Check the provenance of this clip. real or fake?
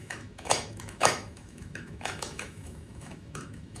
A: fake